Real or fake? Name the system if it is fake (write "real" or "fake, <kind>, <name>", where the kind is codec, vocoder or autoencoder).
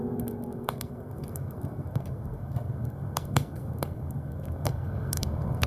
fake, codec, SNAC